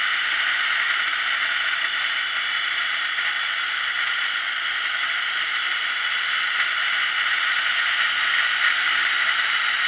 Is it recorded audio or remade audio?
recorded